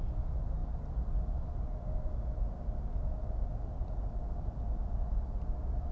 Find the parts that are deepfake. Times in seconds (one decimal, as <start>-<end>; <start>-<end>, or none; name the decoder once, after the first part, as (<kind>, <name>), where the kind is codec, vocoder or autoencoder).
none